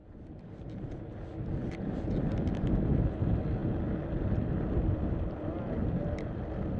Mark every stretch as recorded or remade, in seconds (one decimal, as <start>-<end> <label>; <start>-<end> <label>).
0.0-6.8 recorded